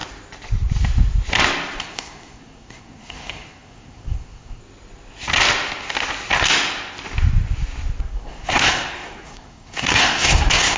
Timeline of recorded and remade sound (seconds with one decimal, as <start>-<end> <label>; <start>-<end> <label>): 0.0-1.8 recorded; 1.8-4.6 remade; 4.6-8.0 recorded; 8.0-10.8 remade